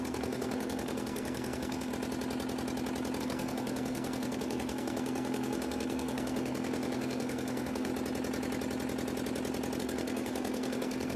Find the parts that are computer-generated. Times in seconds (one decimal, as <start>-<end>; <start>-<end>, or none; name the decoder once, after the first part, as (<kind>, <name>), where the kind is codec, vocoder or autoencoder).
0.0-1.9 (codec, SNAC); 3.2-7.9; 9.8-11.2